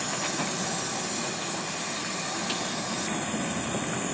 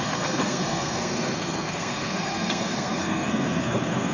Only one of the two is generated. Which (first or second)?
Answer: second